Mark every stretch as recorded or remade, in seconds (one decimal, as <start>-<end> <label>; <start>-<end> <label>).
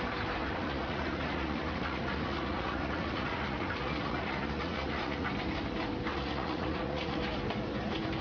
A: 0.0-0.4 recorded; 0.4-5.3 remade; 5.3-6.1 recorded; 6.1-7.2 remade; 7.2-8.2 recorded